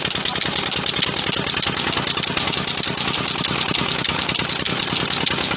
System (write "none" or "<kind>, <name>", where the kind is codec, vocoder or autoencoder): none